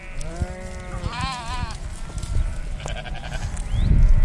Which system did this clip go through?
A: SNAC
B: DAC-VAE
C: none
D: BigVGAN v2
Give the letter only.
C